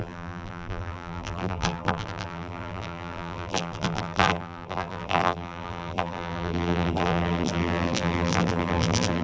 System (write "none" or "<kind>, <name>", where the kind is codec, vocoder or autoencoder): vocoder, BigVGAN v2